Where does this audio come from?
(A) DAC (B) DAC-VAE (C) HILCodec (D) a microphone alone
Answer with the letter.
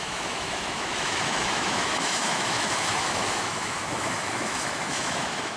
B